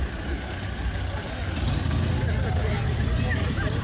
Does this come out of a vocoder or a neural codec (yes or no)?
no